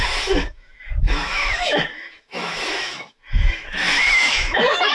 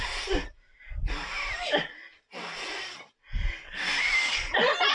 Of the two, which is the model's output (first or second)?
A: first